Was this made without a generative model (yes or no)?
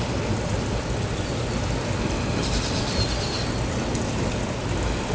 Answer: yes